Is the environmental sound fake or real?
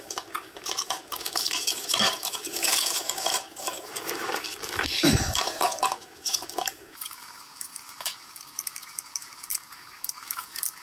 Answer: fake